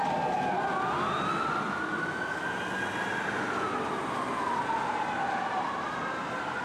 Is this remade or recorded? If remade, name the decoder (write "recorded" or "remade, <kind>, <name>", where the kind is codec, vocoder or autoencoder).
recorded